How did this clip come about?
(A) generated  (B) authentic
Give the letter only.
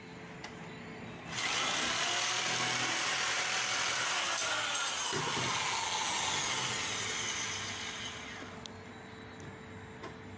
B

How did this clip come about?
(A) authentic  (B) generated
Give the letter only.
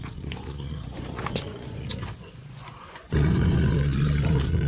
B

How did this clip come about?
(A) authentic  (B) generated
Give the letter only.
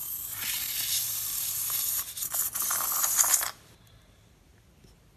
A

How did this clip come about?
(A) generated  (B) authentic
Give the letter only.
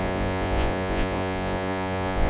A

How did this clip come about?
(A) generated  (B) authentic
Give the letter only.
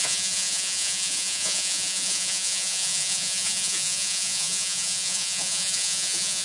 A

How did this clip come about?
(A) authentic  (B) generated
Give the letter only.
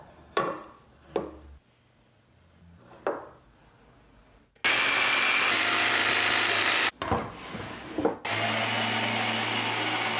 A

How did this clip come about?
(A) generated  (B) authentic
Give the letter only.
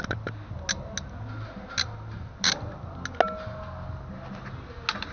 B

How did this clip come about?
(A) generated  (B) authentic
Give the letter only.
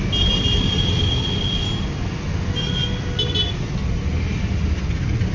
B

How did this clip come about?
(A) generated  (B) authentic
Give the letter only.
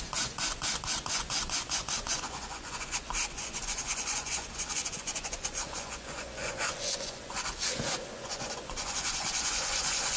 A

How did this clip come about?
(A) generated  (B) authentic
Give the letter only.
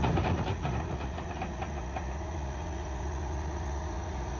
A